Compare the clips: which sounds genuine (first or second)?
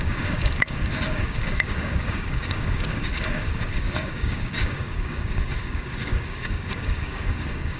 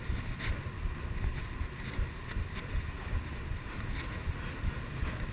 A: second